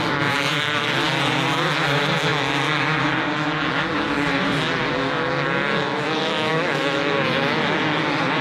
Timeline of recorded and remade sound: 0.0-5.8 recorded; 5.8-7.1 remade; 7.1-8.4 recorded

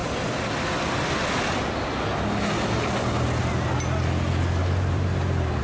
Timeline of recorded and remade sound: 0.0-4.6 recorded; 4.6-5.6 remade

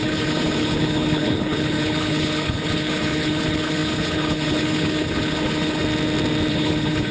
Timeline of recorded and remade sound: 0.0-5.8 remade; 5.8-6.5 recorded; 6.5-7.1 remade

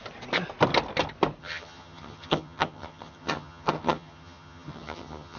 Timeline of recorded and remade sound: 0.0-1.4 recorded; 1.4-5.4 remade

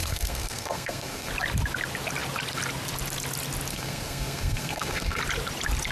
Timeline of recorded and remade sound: 0.0-1.3 remade; 1.3-3.7 recorded; 3.7-5.2 remade; 5.2-5.9 recorded

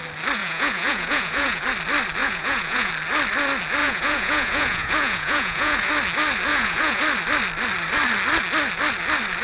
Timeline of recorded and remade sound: 0.0-0.4 recorded; 0.4-1.6 remade; 1.6-2.2 recorded; 2.2-2.9 remade; 2.9-3.8 recorded; 3.8-5.9 remade; 5.9-6.5 recorded; 6.5-7.0 remade; 7.0-9.4 recorded

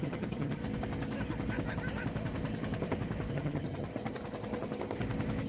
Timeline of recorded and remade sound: 0.0-0.6 remade; 0.6-3.3 recorded; 3.3-3.9 remade; 3.9-5.5 recorded